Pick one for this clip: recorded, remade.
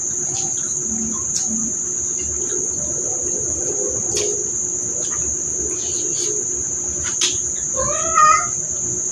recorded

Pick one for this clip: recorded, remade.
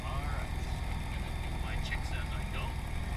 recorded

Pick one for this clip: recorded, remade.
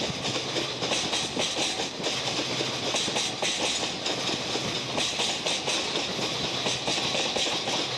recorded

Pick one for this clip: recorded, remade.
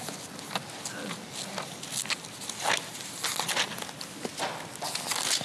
recorded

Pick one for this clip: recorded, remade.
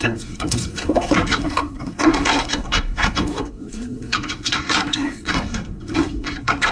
remade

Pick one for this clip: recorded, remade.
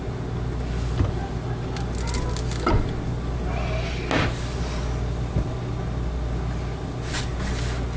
recorded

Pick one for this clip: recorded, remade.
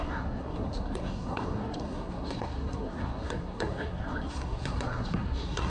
remade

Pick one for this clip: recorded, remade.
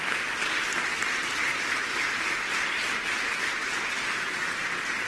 recorded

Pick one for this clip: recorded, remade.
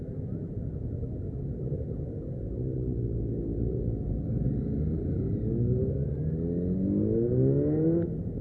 recorded